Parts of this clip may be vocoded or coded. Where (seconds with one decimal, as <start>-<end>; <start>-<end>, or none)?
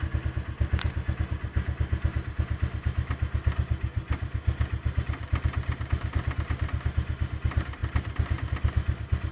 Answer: none